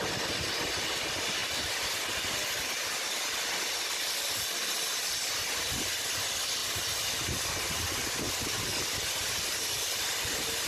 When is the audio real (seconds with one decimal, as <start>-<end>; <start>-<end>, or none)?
0.0-10.7